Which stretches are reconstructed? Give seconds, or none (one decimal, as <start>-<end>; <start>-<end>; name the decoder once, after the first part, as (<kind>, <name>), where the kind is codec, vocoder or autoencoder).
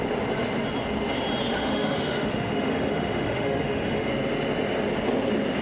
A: 1.5-4.1 (autoencoder, DAC-VAE)